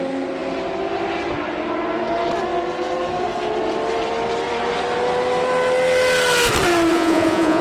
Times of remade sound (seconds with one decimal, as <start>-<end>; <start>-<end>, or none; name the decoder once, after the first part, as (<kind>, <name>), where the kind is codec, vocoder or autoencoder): 6.9-7.6 (vocoder, Vocos)